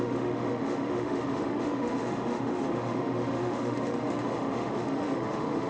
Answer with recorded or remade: remade